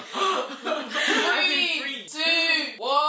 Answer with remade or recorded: remade